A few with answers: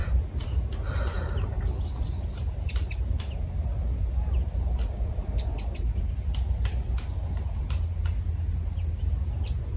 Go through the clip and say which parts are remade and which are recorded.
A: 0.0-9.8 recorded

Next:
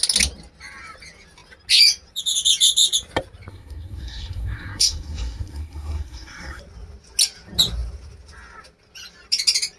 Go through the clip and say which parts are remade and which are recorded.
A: 0.0-3.5 recorded; 3.5-6.6 remade; 6.6-9.8 recorded

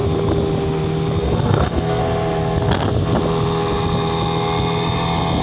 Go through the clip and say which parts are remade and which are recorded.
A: 0.0-1.2 recorded; 1.2-2.0 remade; 2.0-5.4 recorded

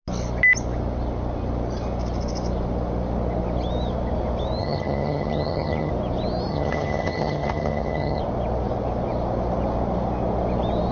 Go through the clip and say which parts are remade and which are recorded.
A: 0.0-4.6 recorded; 4.6-5.9 remade; 5.9-6.5 recorded; 6.5-8.2 remade; 8.2-10.9 recorded

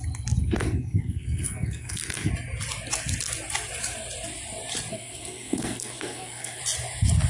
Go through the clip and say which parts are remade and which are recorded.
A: 0.0-0.4 recorded; 0.4-2.3 remade; 2.3-4.9 recorded; 4.9-6.6 remade; 6.6-7.3 recorded

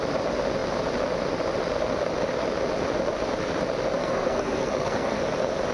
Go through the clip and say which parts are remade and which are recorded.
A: 0.0-4.0 recorded; 4.0-5.2 remade; 5.2-5.7 recorded

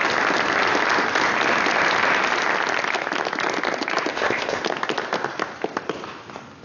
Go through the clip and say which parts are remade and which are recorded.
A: 0.0-4.1 recorded; 4.1-4.6 remade; 4.6-6.6 recorded

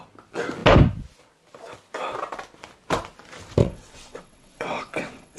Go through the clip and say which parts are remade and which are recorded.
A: 0.0-3.6 recorded; 3.6-5.4 remade